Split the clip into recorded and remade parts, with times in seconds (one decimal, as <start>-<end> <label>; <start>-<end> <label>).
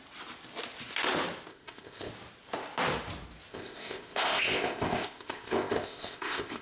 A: 0.0-1.5 recorded; 1.5-2.1 remade; 2.1-3.5 recorded; 3.5-6.6 remade